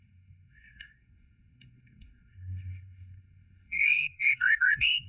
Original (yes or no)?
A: no